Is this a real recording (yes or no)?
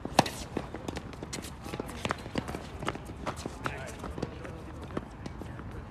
yes